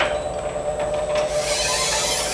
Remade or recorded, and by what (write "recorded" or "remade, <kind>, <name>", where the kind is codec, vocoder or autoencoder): recorded